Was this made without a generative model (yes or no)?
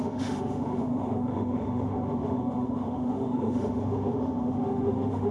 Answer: no